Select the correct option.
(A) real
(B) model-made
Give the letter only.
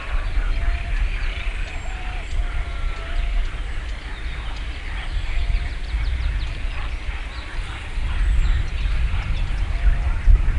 A